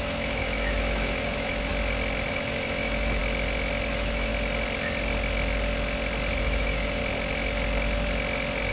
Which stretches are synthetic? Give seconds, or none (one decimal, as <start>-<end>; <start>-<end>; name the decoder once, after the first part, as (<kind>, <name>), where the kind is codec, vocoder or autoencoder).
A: 0.0-1.7 (autoencoder, DAC-VAE); 2.3-3.2; 3.9-4.3; 6.4-7.0